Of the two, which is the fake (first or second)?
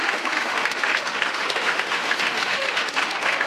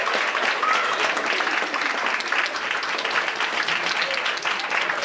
first